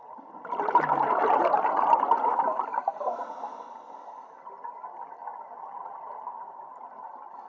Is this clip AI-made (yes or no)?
no